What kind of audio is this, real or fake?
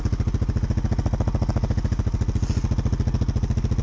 real